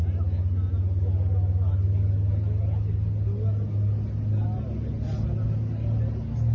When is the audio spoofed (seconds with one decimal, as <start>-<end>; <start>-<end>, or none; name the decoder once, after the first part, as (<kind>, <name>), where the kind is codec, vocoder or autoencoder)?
none